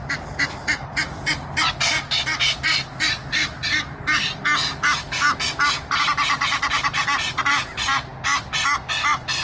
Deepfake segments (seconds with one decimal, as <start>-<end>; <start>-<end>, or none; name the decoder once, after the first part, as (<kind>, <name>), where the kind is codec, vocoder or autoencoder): none